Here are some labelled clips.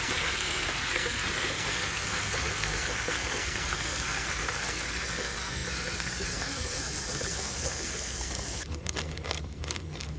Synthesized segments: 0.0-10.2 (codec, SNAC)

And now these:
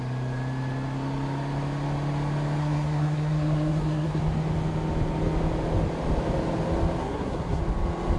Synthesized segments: 2.6-4.2 (codec, SNAC); 7.0-7.6

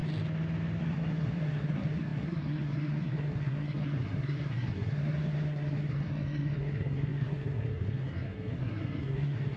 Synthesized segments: 0.8-9.6 (codec, SNAC)

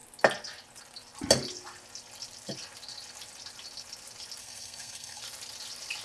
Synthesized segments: 4.4-5.2 (codec, SNAC)

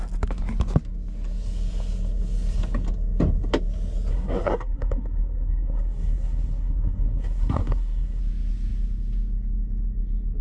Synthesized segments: 4.1-8.2 (codec, SNAC)

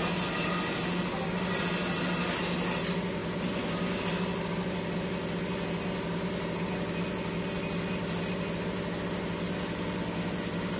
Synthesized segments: none

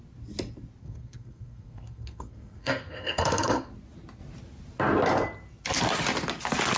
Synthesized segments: 0.8-3.7 (codec, SNAC)